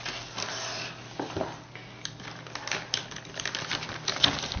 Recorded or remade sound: recorded